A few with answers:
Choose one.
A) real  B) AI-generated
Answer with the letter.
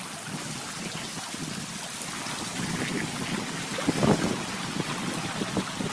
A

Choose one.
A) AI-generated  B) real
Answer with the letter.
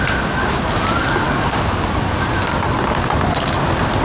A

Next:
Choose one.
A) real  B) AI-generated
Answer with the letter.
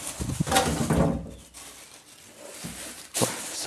A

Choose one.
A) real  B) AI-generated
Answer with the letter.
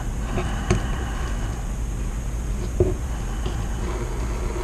A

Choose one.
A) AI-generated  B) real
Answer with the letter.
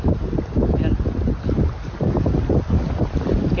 B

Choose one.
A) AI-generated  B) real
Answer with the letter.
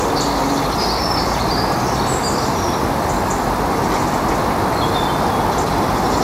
B